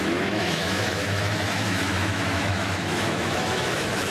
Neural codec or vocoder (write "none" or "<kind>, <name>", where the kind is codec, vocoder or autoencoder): autoencoder, DAC-VAE